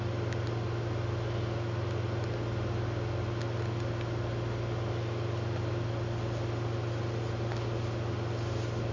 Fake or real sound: real